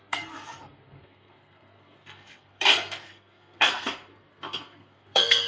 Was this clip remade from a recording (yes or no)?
yes